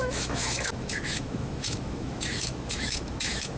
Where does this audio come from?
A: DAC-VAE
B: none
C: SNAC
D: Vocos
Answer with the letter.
A